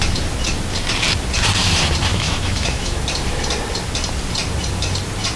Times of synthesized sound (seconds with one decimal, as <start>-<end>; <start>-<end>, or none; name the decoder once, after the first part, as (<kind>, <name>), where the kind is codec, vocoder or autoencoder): 2.1-3.0 (autoencoder, DAC-VAE)